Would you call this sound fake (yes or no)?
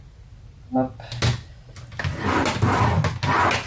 no